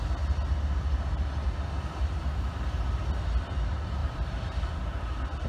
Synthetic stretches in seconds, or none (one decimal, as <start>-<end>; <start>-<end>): 4.0-5.0